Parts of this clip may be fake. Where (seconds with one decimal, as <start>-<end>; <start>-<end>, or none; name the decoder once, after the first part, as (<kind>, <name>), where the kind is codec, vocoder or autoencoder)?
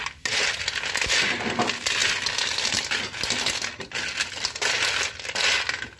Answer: none